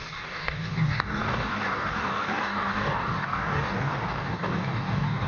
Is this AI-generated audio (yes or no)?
yes